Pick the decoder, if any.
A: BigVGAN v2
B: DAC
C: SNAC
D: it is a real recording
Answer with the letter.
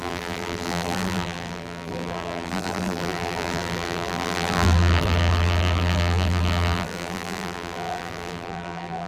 A